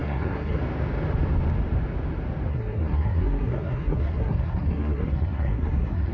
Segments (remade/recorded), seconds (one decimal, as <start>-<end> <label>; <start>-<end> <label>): 0.0-0.6 remade; 0.6-2.5 recorded; 2.5-6.1 remade